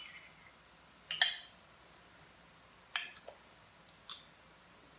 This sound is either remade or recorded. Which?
recorded